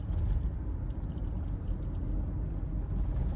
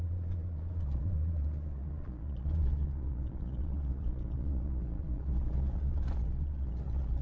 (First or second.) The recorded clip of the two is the first